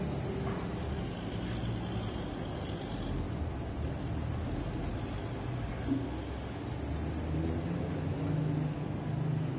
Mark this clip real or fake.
real